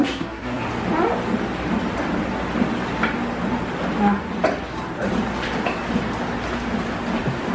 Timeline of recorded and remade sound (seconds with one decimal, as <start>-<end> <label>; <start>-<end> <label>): 0.0-0.6 remade; 0.6-7.5 recorded